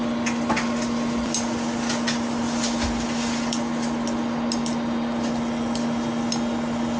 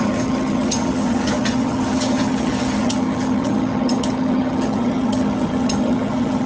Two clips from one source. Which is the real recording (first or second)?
first